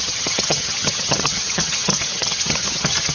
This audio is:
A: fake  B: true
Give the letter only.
A